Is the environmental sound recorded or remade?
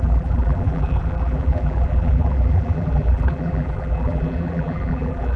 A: remade